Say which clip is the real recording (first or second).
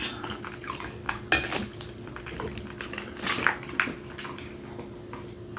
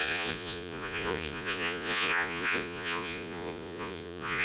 first